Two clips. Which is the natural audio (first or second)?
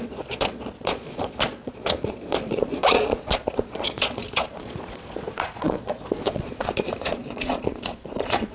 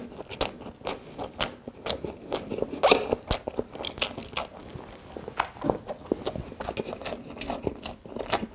second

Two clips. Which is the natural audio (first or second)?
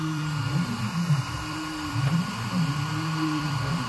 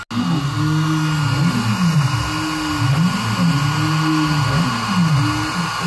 second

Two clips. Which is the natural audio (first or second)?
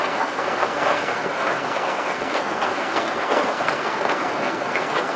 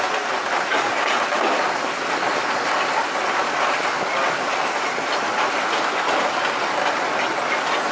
second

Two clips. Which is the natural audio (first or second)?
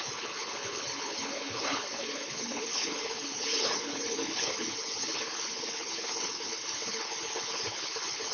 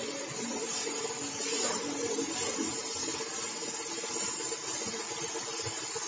second